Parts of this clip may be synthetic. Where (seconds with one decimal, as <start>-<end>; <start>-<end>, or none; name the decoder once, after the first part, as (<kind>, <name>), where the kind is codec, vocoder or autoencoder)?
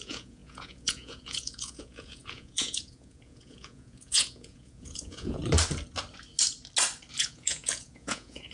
0.0-5.4 (vocoder, Vocos); 7.2-8.5